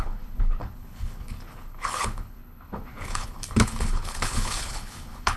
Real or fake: fake